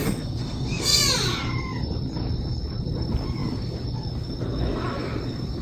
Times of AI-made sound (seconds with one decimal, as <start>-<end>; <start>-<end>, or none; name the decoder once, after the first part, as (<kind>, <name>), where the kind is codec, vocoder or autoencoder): 0.0-1.0 (codec, SNAC)